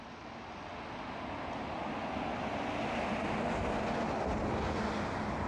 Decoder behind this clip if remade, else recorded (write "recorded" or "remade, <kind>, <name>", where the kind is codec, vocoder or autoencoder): recorded